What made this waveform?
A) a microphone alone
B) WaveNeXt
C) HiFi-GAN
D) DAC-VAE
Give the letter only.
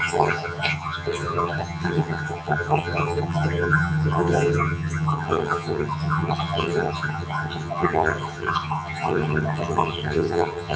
C